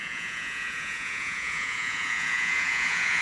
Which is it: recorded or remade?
remade